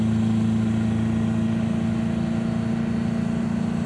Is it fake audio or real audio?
real